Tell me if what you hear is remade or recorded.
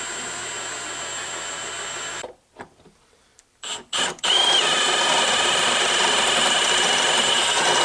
remade